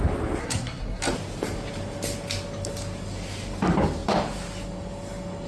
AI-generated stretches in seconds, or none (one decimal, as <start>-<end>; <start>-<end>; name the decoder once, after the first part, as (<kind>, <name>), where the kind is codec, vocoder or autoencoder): 0.4-1.0 (codec, SNAC)